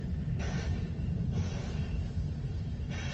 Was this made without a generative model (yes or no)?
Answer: no